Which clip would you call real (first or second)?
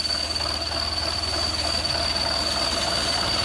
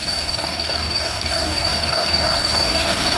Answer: first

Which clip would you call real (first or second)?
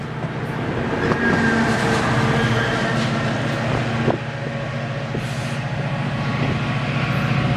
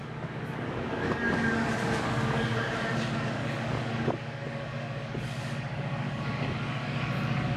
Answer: first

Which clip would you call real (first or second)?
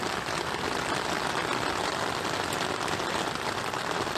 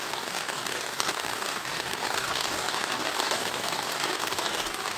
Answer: first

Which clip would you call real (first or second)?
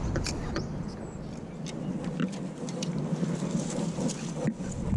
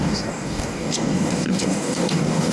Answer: first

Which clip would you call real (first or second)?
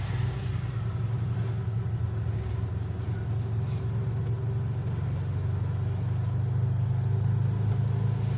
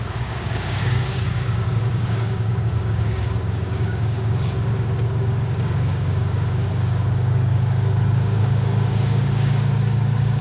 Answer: first